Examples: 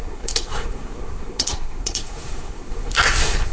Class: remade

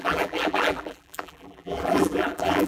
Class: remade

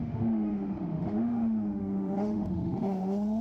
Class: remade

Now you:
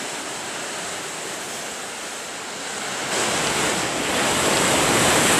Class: recorded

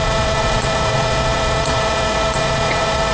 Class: remade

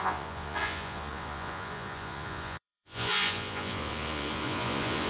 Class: remade